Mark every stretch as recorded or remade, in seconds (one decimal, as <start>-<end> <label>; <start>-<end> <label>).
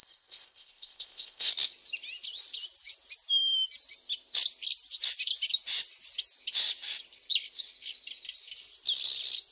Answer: 0.0-1.5 remade; 1.5-9.5 recorded